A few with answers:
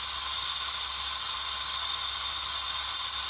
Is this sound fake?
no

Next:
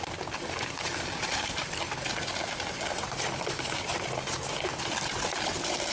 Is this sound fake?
no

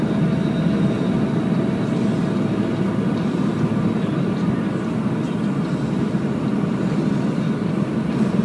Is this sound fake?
no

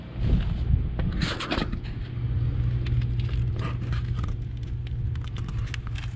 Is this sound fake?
no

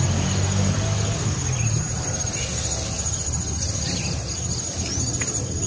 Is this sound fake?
no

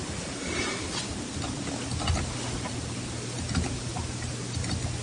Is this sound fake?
no